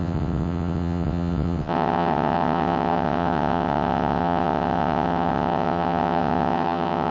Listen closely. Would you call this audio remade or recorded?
remade